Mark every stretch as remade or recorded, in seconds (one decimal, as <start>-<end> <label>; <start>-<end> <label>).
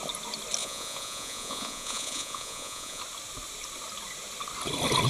0.0-0.6 recorded; 0.6-3.0 remade; 3.0-5.1 recorded